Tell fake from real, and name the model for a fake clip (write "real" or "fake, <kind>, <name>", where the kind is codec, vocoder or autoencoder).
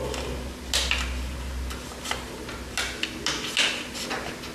real